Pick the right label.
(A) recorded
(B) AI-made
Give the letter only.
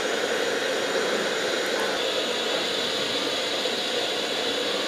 A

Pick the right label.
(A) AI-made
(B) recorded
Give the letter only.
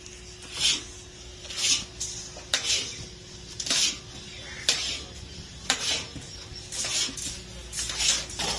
B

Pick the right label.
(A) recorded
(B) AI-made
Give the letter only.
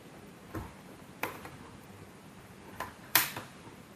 B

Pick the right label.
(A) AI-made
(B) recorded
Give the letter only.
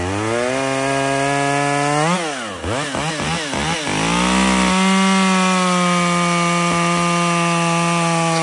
B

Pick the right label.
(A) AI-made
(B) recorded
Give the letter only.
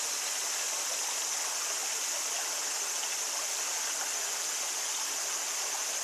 B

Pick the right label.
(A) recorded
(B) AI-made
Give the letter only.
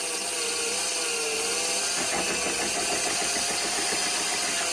A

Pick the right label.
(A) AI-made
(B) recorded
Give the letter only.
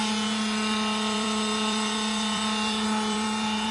A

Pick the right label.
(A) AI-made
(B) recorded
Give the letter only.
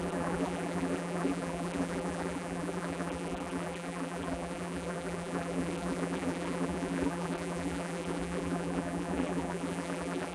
A